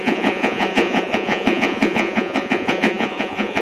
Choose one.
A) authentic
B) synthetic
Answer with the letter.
B